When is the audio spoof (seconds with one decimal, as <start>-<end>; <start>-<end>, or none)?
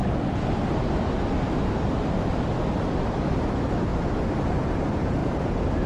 3.5-3.9; 4.5-5.9